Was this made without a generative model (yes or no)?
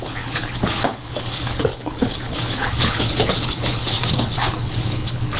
no